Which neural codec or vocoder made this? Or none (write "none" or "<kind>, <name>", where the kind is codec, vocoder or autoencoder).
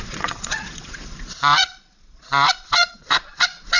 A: vocoder, Vocos